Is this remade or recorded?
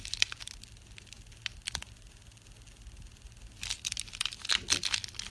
recorded